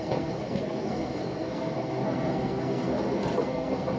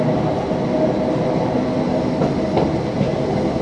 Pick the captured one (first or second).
second